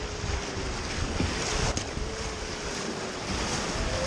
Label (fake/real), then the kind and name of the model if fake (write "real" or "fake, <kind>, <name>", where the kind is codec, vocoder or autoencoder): real